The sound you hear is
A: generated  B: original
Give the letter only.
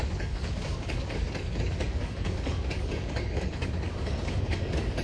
A